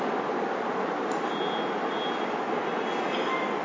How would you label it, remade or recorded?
recorded